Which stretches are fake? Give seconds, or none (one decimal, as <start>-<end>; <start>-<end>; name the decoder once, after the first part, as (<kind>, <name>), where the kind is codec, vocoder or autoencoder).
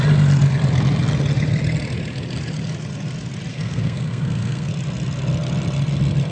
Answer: 3.5-4.7 (codec, SNAC)